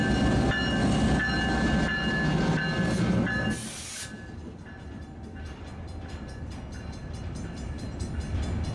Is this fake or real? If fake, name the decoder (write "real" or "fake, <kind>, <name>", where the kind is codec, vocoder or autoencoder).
real